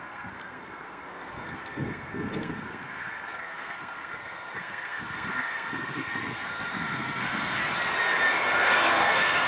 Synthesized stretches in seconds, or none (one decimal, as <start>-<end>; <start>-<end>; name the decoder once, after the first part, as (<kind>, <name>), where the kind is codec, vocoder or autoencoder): 0.0-7.6 (codec, SNAC); 8.6-9.5